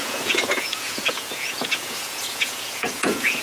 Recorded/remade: remade